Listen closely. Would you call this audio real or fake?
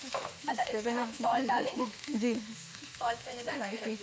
fake